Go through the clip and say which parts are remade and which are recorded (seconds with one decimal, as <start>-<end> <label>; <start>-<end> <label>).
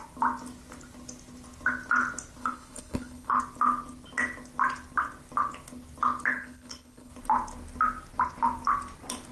0.0-2.4 recorded; 2.4-3.4 remade; 3.4-6.3 recorded; 6.3-7.1 remade; 7.1-9.3 recorded